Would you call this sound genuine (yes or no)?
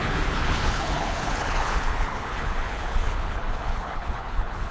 no